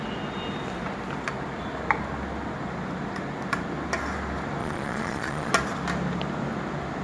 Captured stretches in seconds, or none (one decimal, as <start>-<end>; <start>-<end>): 0.0-4.6; 5.5-7.0